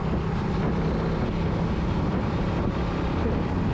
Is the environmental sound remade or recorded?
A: recorded